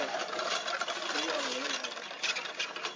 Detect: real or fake real